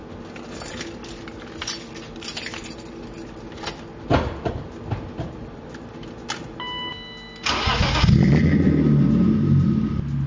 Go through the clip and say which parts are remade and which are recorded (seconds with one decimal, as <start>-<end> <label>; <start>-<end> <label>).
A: 0.0-10.3 recorded